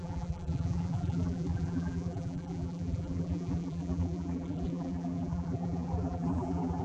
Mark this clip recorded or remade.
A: remade